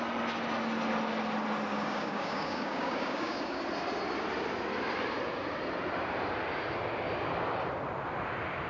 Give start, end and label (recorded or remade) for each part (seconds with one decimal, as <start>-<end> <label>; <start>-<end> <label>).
0.0-1.7 recorded; 1.7-3.6 remade; 3.6-8.7 recorded